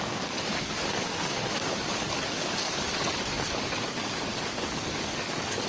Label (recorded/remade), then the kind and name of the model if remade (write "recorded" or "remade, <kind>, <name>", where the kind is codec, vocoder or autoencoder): remade, codec, DAC